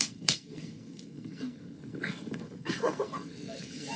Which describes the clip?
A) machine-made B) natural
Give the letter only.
A